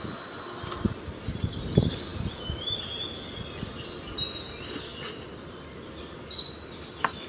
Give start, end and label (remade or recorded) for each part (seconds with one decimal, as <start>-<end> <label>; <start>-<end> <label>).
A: 0.0-7.3 recorded